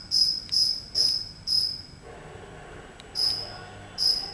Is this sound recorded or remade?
recorded